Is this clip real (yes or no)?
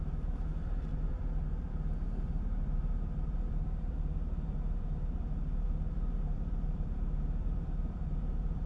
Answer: no